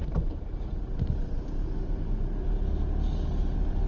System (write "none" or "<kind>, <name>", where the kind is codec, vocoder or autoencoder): none